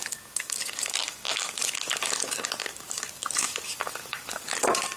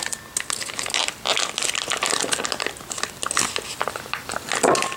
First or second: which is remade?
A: first